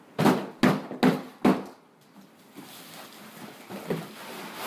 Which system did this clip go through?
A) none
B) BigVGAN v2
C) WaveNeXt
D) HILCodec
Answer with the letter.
A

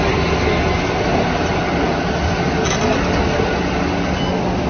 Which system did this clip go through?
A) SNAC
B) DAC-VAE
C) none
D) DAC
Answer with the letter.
C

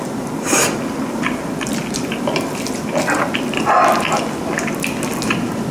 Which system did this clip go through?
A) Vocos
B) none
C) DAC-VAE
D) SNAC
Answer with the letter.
B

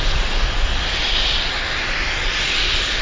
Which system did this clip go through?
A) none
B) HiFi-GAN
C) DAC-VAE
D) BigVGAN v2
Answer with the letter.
A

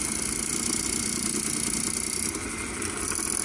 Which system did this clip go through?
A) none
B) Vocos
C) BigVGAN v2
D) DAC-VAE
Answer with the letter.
A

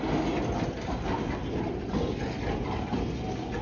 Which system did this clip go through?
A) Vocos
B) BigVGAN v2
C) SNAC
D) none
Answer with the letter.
D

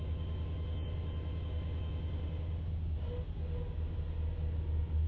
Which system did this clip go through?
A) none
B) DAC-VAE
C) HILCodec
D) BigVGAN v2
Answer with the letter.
A